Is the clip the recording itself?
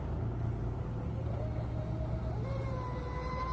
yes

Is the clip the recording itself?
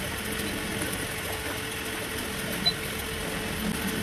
yes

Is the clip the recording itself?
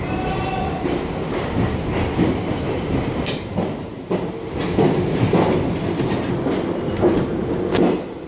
yes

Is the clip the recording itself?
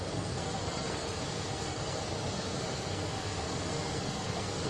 no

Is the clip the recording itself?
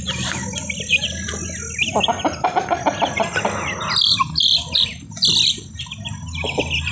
no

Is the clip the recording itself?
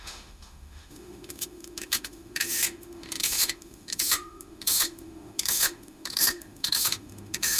no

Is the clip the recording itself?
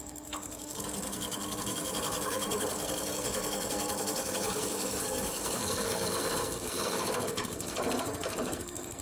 no